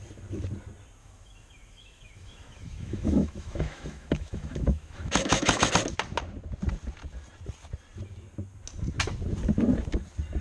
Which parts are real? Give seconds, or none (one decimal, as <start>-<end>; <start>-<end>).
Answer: 0.0-1.0; 5.7-10.4